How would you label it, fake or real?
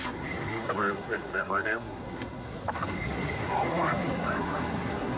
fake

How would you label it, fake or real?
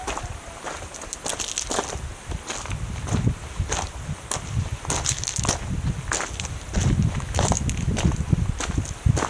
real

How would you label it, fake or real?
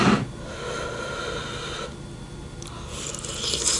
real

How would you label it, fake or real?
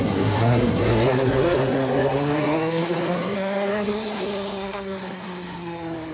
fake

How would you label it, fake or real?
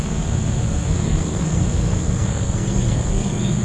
fake